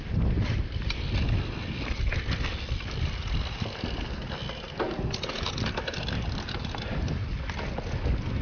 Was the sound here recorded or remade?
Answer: recorded